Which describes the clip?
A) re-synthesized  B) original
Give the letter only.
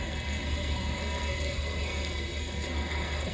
A